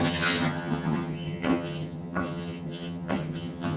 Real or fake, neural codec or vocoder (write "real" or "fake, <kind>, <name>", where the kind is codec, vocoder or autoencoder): fake, vocoder, HiFi-GAN